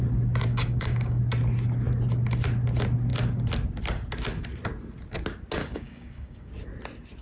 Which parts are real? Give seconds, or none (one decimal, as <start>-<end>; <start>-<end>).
0.0-0.5; 1.2-5.6; 6.5-7.2